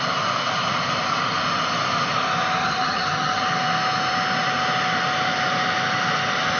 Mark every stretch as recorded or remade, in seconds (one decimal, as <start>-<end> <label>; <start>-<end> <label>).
0.0-2.6 recorded; 2.6-3.4 remade; 3.4-6.6 recorded

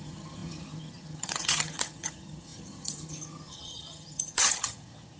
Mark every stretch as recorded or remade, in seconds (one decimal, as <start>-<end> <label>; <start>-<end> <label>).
0.0-5.2 remade

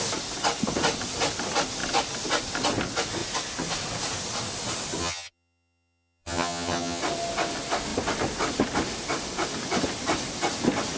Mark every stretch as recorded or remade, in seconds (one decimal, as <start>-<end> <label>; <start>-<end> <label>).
0.0-5.0 recorded; 5.0-7.0 remade; 7.0-11.0 recorded

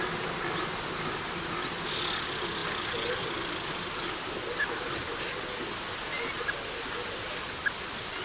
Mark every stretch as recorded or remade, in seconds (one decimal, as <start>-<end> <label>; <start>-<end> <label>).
0.0-8.2 recorded

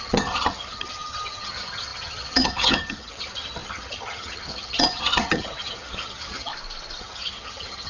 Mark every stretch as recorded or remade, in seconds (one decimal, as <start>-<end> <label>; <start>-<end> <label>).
0.0-6.5 remade; 6.5-7.0 recorded; 7.0-7.9 remade